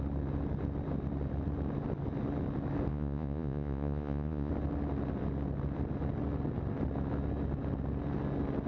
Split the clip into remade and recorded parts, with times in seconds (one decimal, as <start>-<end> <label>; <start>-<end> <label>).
0.0-2.9 recorded; 2.9-4.5 remade; 4.5-8.7 recorded